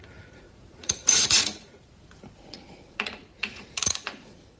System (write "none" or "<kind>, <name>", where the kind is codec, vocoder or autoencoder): vocoder, Vocos